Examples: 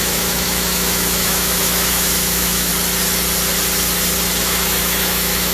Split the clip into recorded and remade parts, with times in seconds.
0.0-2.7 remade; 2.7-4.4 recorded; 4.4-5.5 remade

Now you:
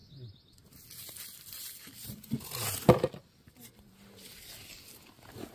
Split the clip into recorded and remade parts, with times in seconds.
0.0-5.5 recorded